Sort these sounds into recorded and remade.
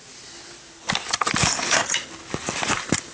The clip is recorded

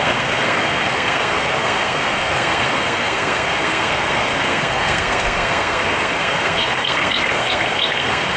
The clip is remade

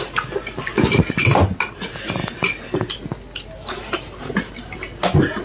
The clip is recorded